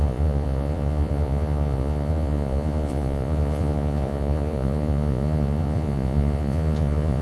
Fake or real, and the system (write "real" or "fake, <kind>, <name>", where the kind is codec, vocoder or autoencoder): fake, vocoder, Vocos